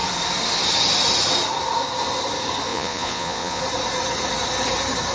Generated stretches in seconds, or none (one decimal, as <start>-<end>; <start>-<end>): 2.7-3.6